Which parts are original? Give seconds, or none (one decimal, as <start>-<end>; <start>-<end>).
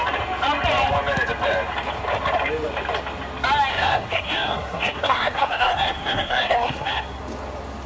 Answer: 0.0-3.7; 7.2-7.9